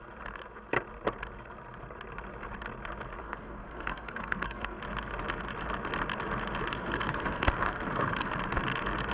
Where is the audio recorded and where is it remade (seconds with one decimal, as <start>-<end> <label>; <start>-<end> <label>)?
0.0-3.2 recorded; 3.2-4.8 remade; 4.8-6.7 recorded; 6.7-8.3 remade; 8.3-9.1 recorded